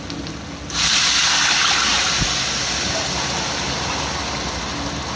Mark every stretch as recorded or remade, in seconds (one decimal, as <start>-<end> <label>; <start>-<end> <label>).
0.0-5.2 recorded